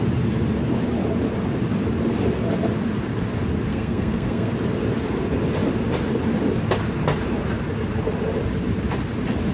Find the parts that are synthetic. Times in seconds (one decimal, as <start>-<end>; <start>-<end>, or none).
3.7-4.5